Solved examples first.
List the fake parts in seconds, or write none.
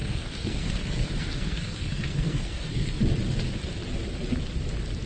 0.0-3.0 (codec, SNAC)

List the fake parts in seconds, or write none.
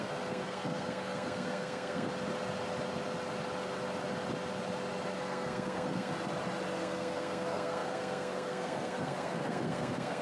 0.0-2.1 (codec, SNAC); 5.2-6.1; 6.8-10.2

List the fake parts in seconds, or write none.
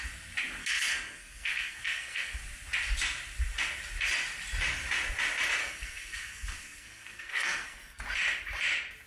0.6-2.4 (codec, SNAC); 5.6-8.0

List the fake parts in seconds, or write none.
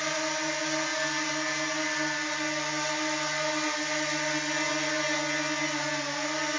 none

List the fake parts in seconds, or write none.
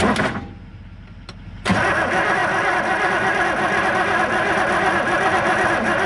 none